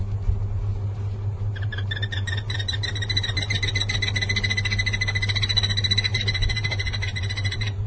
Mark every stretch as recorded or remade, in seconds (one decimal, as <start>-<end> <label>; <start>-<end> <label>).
0.0-0.7 recorded; 0.7-3.7 remade; 3.7-6.1 recorded; 6.1-7.9 remade